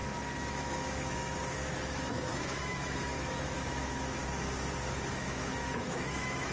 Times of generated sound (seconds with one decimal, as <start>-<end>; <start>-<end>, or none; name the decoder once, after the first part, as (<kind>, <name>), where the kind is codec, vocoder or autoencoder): 0.0-4.2 (autoencoder, DAC-VAE); 5.1-6.5